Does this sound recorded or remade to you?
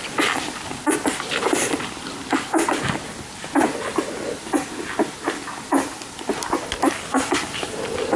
recorded